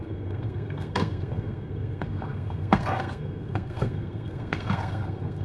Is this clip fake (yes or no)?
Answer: yes